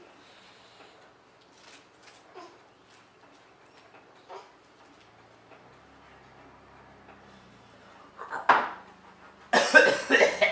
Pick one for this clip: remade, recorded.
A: recorded